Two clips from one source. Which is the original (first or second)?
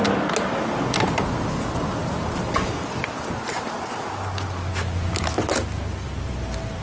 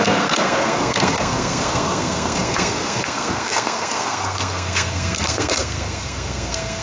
first